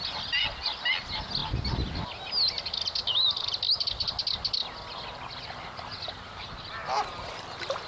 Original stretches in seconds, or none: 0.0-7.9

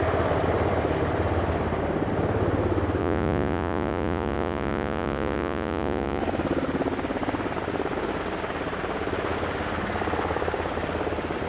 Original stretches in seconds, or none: 0.0-3.0; 6.2-11.5

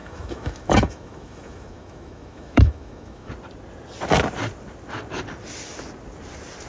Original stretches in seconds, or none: 3.3-6.7

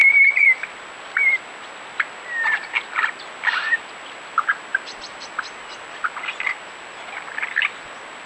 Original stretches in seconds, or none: 0.0-8.3